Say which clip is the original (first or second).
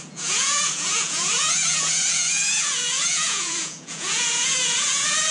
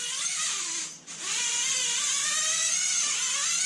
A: second